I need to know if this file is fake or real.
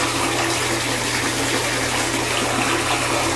real